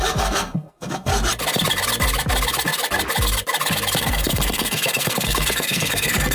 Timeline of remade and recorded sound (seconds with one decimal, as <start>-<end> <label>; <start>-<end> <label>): 0.0-1.1 remade; 1.1-4.0 recorded; 4.0-6.3 remade